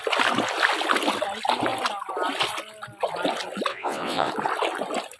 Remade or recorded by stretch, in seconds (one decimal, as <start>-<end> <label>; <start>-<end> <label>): 0.0-3.7 recorded; 3.7-4.3 remade; 4.3-5.2 recorded